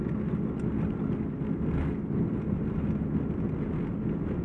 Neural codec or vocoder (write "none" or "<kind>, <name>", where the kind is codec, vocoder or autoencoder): none